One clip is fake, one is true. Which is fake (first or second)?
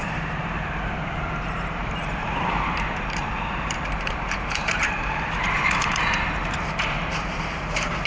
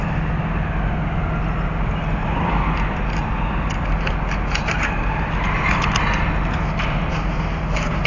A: first